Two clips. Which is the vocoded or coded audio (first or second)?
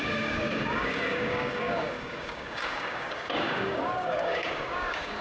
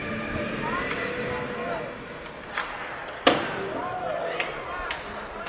first